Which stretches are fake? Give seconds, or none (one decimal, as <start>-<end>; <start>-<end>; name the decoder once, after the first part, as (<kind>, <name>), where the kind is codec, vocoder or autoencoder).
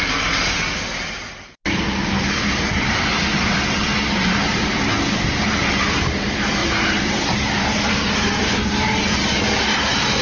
6.6-7.8 (vocoder, BigVGAN v2); 8.4-10.2